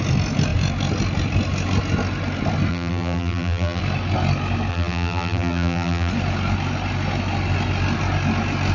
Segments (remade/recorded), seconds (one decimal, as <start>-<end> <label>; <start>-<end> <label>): 0.0-2.7 recorded; 2.7-3.8 remade; 3.8-4.7 recorded; 4.7-6.1 remade; 6.1-8.7 recorded